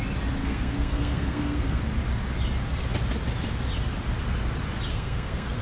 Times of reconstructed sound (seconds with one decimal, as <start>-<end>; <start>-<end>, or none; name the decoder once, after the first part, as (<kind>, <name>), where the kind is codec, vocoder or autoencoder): 0.4-1.8 (codec, SNAC); 4.9-5.6

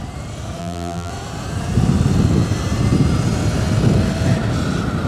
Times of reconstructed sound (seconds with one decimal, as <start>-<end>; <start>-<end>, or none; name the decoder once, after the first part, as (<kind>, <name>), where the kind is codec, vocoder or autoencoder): 0.6-1.1 (vocoder, BigVGAN v2)

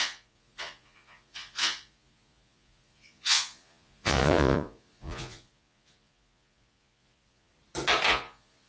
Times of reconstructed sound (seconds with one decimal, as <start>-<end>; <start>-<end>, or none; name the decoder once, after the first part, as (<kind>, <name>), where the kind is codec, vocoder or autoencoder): 0.0-7.5 (vocoder, Vocos); 8.1-8.7

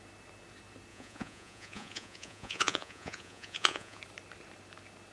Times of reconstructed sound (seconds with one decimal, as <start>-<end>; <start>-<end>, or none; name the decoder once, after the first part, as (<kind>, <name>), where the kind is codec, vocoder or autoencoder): 0.9-4.0 (vocoder, Vocos)

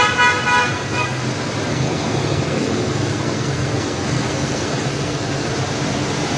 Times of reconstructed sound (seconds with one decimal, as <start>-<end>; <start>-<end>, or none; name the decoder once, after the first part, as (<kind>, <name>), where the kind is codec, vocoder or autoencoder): 0.6-1.2 (codec, SNAC); 1.7-5.5

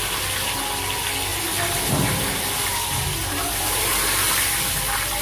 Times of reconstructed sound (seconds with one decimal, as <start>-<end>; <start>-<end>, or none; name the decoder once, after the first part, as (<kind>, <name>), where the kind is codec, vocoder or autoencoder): 1.3-4.3 (vocoder, BigVGAN v2)

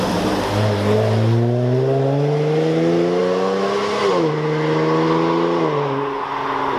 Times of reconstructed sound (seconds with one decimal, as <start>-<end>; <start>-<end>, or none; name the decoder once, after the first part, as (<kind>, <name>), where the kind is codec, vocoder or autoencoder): none